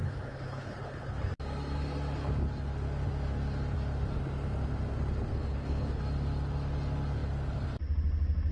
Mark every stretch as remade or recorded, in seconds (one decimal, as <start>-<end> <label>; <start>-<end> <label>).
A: 0.0-1.3 remade; 1.3-5.3 recorded; 5.3-6.0 remade; 6.0-8.5 recorded